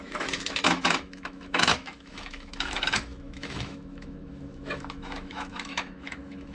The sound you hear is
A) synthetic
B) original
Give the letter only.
A